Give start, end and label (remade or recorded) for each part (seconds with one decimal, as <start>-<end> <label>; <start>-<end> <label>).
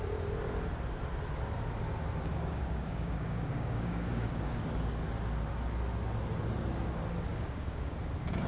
0.0-2.3 recorded; 2.3-4.9 remade; 4.9-7.3 recorded; 7.3-7.9 remade; 7.9-8.5 recorded